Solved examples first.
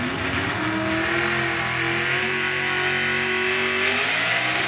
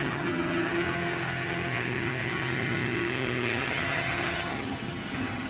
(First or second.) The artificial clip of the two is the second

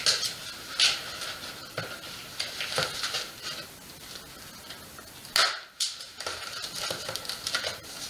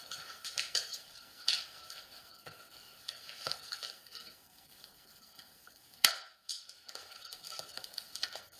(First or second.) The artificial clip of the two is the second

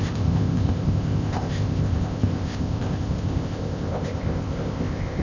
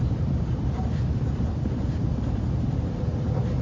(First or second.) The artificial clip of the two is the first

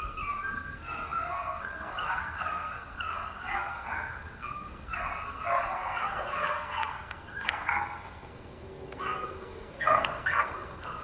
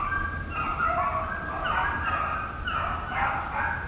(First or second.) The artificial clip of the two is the first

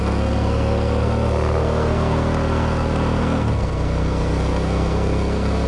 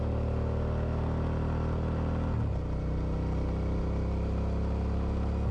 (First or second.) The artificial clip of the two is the first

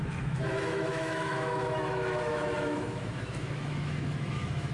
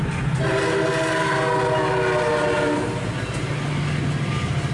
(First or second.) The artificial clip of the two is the first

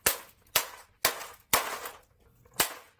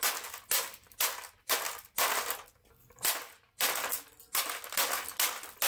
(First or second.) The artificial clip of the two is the first